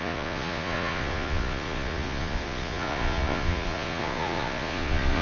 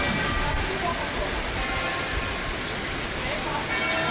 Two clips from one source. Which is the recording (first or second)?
second